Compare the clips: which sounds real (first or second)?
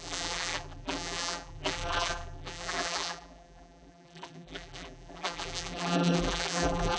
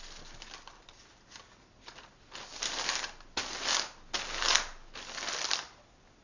second